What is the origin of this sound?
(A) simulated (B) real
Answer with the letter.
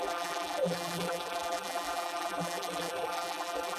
A